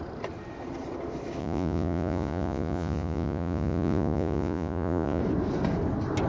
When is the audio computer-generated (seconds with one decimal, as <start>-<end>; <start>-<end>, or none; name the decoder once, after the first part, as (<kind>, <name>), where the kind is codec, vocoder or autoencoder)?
1.4-5.2 (vocoder, Vocos)